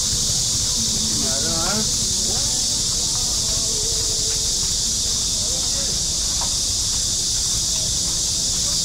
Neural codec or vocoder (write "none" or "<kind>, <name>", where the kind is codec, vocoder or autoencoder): none